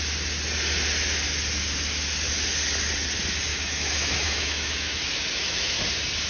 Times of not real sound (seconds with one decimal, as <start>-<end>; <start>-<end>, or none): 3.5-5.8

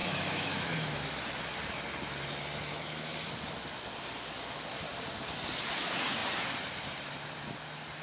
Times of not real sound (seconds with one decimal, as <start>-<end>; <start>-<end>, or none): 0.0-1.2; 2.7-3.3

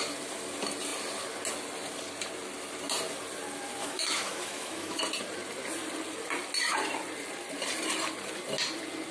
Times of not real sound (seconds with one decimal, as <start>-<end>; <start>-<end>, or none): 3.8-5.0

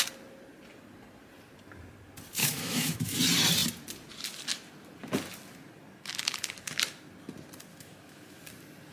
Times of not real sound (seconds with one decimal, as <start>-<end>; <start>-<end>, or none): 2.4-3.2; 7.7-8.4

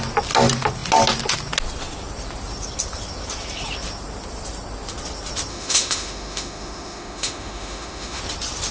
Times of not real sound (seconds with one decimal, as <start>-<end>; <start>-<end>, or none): 5.5-8.2

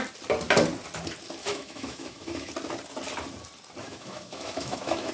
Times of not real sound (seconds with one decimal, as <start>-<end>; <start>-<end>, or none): 1.4-2.5; 3.8-5.1